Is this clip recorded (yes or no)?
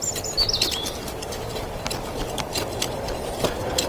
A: yes